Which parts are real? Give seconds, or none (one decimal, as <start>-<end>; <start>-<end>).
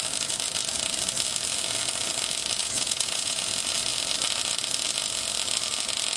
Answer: 0.0-2.6; 3.4-6.2